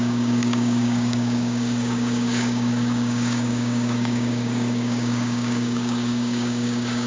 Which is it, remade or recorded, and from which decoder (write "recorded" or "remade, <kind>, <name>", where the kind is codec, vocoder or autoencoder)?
remade, codec, DAC